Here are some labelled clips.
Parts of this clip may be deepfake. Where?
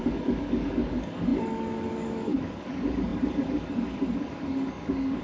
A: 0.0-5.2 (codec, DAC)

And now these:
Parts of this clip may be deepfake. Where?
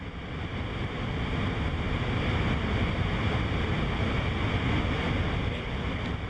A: none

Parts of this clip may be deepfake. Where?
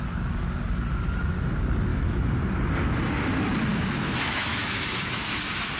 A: 1.9-2.4 (autoencoder, DAC-VAE); 3.7-5.2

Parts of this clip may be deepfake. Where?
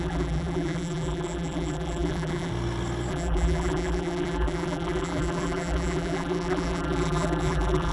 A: 0.0-2.5 (vocoder, BigVGAN v2); 3.1-7.9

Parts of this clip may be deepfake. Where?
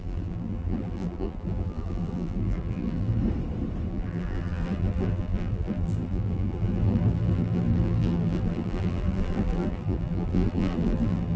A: 0.0-3.2 (vocoder, BigVGAN v2); 3.9-11.4